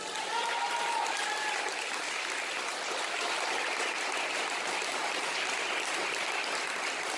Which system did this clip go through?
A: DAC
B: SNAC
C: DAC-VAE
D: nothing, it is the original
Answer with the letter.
D